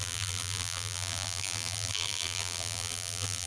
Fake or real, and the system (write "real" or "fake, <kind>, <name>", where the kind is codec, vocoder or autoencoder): fake, vocoder, BigVGAN v2